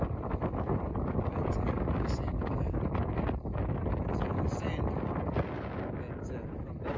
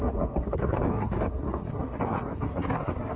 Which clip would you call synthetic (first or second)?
second